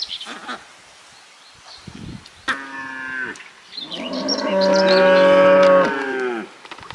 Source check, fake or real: real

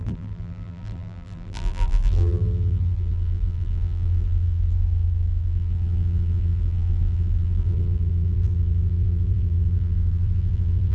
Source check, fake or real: fake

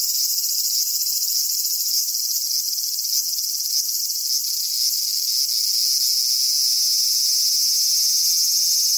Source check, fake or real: real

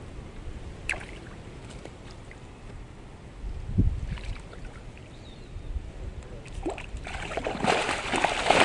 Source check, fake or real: fake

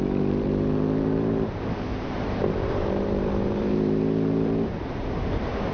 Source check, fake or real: fake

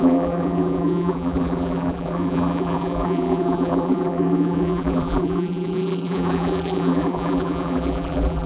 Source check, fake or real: fake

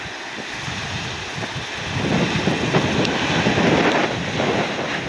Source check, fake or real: real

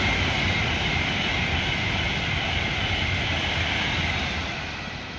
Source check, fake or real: fake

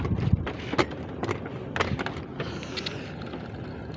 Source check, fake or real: real